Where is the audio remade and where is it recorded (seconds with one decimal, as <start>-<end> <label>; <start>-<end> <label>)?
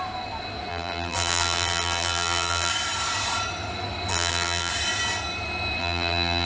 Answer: 0.0-0.7 recorded; 0.7-2.7 remade; 2.7-4.1 recorded; 4.1-4.7 remade; 4.7-5.8 recorded; 5.8-6.5 remade